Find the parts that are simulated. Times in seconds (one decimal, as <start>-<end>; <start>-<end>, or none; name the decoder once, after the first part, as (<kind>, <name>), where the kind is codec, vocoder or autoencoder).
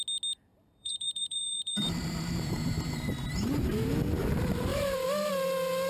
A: 0.5-3.9 (vocoder, BigVGAN v2); 4.7-5.3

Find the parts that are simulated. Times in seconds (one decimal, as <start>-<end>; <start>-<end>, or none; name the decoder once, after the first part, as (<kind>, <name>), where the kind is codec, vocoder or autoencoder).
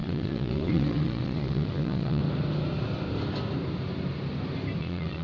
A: 0.0-2.2 (vocoder, Vocos); 4.8-5.2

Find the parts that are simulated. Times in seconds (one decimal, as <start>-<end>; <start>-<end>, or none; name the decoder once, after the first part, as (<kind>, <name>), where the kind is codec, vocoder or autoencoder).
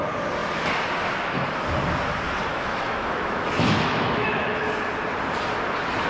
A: 2.5-4.7 (autoencoder, DAC-VAE)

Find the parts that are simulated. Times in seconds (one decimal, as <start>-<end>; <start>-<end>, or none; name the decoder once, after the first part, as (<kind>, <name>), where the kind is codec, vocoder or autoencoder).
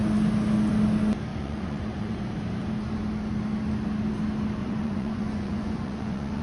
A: 1.3-2.2 (vocoder, Vocos); 4.6-6.4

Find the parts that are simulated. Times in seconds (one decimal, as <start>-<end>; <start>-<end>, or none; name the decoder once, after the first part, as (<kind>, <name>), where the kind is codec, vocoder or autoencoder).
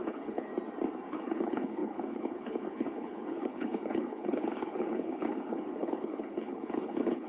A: 0.0-0.5 (codec, HILCodec); 1.1-7.3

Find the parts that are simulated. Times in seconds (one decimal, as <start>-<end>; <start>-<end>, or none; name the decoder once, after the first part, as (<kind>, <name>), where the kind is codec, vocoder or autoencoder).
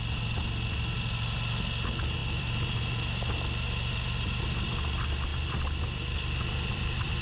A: 2.2-2.8 (vocoder, BigVGAN v2); 5.3-7.2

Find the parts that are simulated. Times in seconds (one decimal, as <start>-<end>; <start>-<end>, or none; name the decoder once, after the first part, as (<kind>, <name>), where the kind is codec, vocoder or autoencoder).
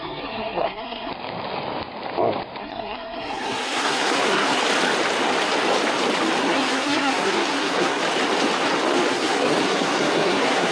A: 0.0-1.1 (codec, SNAC); 2.6-4.6; 6.4-8.0; 9.1-10.7